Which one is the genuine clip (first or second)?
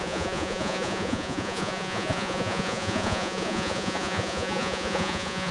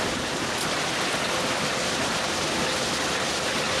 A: second